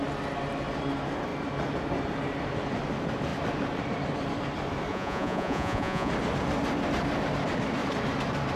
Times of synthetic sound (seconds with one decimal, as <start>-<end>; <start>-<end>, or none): 4.9-6.1